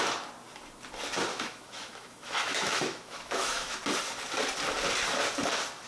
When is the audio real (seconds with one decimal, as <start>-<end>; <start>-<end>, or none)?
0.0-1.3; 3.8-5.9